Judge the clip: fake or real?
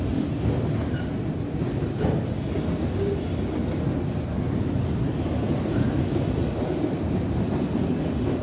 real